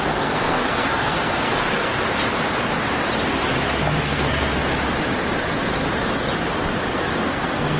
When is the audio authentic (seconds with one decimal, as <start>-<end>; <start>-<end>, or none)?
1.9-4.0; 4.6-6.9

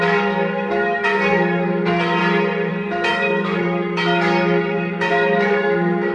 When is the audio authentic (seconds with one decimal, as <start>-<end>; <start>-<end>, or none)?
2.2-2.7

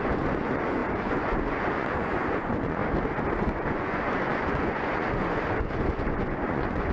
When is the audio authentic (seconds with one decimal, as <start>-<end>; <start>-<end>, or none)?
2.8-3.4

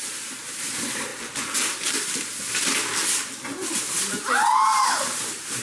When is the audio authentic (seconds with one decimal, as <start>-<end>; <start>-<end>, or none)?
1.1-4.0